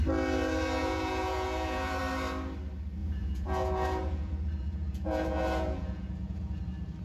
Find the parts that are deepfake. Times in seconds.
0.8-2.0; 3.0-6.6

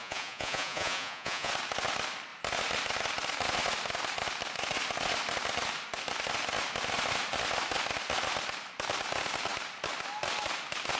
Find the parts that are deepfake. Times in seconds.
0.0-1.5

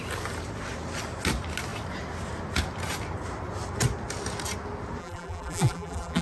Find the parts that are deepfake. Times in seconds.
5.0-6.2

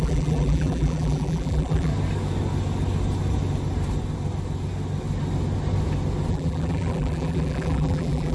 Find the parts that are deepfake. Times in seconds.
0.0-1.9; 6.3-8.3